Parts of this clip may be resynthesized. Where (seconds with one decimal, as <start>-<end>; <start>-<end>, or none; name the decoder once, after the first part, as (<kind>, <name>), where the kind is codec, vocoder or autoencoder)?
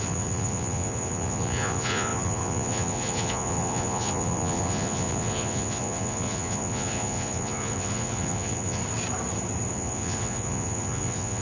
0.0-8.8 (vocoder, Vocos); 9.7-11.4